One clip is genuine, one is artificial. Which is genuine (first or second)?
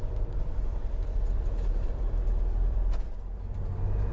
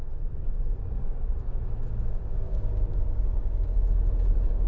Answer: second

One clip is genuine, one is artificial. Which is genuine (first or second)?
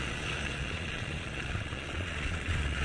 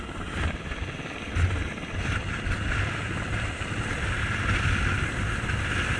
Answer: second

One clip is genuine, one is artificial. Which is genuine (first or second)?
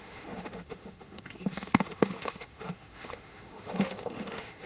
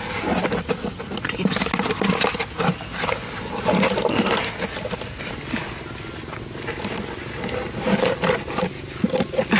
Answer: second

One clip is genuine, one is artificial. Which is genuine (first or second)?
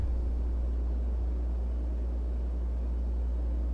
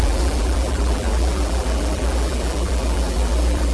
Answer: first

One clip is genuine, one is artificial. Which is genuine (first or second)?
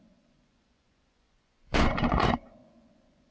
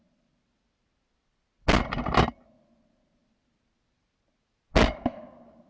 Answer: second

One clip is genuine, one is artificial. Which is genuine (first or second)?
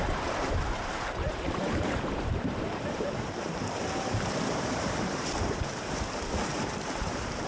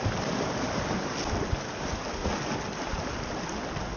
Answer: second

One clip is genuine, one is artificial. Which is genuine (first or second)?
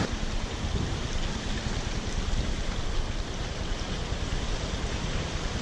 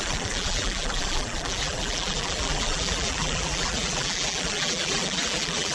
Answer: first